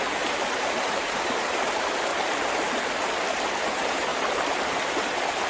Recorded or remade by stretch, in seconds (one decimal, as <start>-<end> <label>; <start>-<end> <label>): 0.0-2.1 remade; 2.1-3.5 recorded; 3.5-4.1 remade; 4.1-5.1 recorded; 5.1-5.5 remade